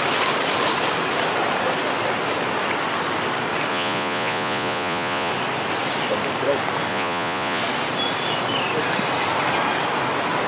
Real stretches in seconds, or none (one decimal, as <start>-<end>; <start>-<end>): 0.0-3.7; 5.3-6.9; 7.6-10.5

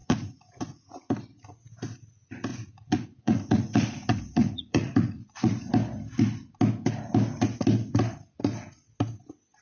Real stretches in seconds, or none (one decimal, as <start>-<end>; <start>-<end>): 1.1-2.5; 5.7-9.6

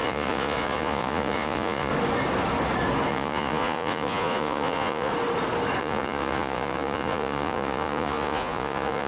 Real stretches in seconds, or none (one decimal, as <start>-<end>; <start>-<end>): 1.9-3.1; 5.1-5.8

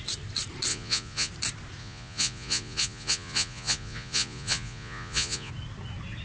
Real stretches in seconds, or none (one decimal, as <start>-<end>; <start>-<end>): 0.0-0.7; 1.3-1.8; 5.5-6.2

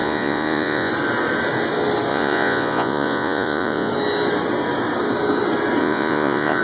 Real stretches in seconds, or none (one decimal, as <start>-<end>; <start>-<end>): 0.9-2.1; 3.9-5.8

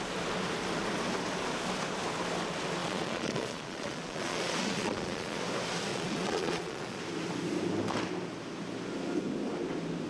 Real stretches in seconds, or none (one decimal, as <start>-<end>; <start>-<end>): 0.0-2.8; 5.4-5.9; 7.0-10.1